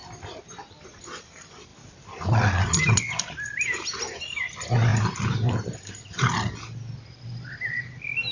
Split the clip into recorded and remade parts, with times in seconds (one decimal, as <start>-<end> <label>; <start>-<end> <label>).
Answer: 0.0-1.1 remade; 1.1-1.7 recorded; 1.7-2.9 remade; 2.9-8.3 recorded